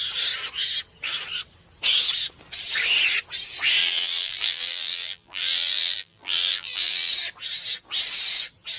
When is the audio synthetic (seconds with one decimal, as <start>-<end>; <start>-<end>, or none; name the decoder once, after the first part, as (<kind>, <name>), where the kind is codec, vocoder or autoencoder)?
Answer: 3.8-7.1 (vocoder, BigVGAN v2)